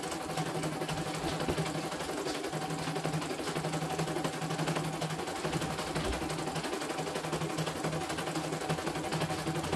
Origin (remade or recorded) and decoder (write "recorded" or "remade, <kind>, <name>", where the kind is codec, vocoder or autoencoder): recorded